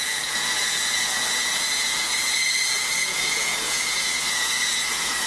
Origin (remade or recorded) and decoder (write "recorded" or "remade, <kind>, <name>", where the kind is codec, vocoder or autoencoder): remade, vocoder, Vocos